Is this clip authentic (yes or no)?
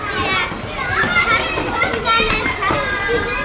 yes